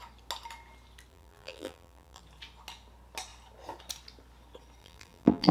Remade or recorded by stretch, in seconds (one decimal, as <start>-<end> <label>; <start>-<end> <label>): 0.0-1.1 recorded; 1.1-2.2 remade; 2.2-4.8 recorded; 4.8-5.5 remade